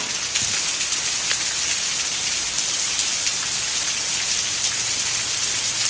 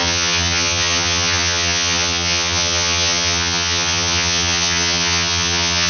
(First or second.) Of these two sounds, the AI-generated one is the second